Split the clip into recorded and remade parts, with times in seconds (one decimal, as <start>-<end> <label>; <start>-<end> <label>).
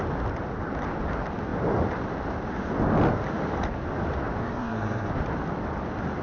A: 0.0-4.4 recorded; 4.4-5.1 remade; 5.1-6.2 recorded